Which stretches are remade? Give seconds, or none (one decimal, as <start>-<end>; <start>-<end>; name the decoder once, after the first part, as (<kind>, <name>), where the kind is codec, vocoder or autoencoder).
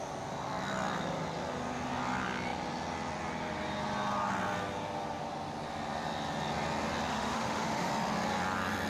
7.1-7.9 (autoencoder, DAC-VAE)